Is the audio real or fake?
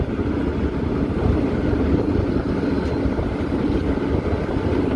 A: real